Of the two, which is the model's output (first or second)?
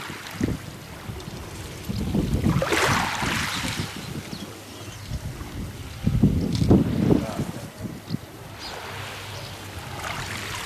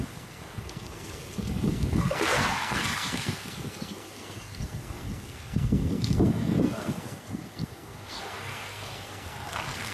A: second